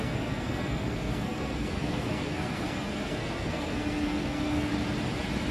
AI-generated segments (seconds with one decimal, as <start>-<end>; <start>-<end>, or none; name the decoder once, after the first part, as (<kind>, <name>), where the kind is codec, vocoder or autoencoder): 0.0-4.7 (codec, SNAC)